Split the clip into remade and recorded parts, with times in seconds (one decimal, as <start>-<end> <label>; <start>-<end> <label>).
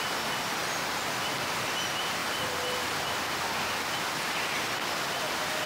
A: 0.0-2.2 remade; 2.2-5.7 recorded